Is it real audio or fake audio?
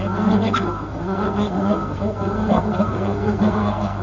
fake